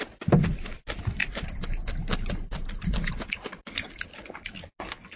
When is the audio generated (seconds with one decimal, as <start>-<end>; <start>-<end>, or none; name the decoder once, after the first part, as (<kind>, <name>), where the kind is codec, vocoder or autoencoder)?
none